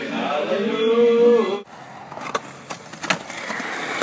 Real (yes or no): yes